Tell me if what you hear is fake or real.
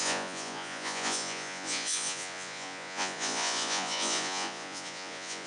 fake